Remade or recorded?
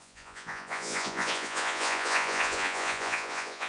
remade